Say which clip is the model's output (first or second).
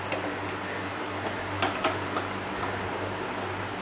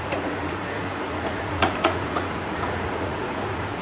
second